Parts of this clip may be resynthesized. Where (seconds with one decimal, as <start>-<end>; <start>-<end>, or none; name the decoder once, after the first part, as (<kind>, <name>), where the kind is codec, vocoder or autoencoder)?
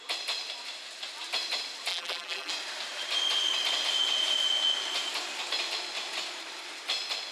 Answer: 1.9-2.5 (vocoder, BigVGAN v2)